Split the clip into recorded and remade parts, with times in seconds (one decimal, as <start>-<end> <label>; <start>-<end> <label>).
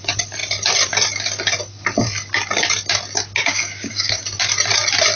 0.0-3.4 recorded; 3.4-4.2 remade; 4.2-5.2 recorded